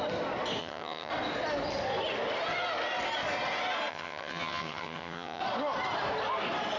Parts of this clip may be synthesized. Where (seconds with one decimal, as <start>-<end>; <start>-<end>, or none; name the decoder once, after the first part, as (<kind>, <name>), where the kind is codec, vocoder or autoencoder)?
0.6-1.1 (vocoder, HiFi-GAN); 3.9-5.4